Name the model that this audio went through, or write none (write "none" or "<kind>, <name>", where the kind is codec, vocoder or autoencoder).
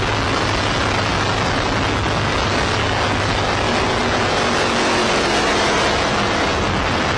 none